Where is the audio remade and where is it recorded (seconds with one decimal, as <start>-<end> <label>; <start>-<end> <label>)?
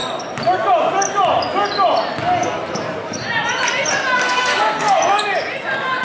0.0-4.2 recorded; 4.2-5.0 remade; 5.0-6.0 recorded